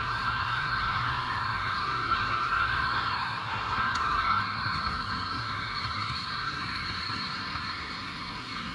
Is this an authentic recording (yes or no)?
no